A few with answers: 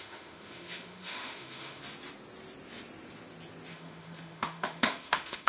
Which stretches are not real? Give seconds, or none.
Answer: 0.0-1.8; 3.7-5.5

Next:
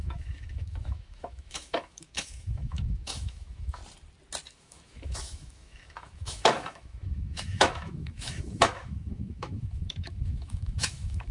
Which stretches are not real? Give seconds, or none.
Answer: 0.0-3.8; 4.5-11.3

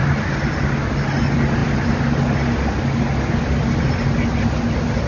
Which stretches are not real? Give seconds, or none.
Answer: none

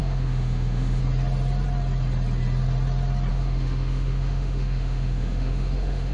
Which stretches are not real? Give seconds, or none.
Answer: 0.0-1.0; 3.3-6.1

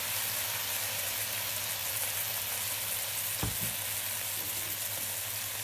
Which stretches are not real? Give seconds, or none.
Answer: none

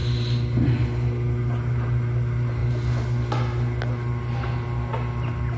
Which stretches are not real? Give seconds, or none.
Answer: none

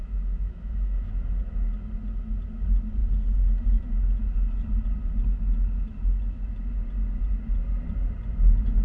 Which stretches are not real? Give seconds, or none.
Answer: 0.0-1.1

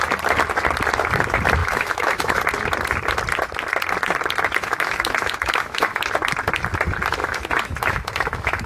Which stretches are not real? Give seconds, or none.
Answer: 1.6-2.4; 4.6-6.0; 7.2-8.7